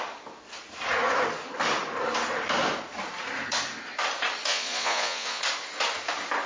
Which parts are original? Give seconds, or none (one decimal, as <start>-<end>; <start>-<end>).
0.0-4.5; 5.4-6.5